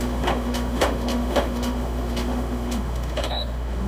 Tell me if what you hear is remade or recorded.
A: remade